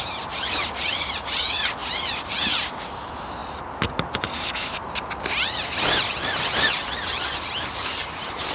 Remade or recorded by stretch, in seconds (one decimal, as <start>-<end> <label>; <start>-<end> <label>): 0.0-8.5 recorded